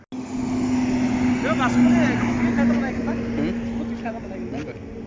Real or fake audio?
real